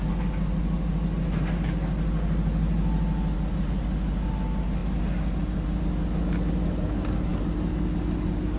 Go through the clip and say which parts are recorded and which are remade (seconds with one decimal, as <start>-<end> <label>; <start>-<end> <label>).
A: 0.0-8.6 recorded